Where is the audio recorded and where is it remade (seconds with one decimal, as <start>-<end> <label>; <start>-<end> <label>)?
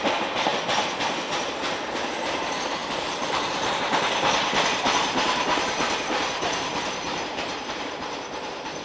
0.0-0.5 remade; 0.5-2.1 recorded; 2.1-8.8 remade